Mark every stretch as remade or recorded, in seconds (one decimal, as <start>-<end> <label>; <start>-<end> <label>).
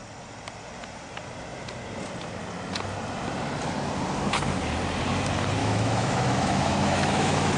0.0-5.6 recorded; 5.6-7.6 remade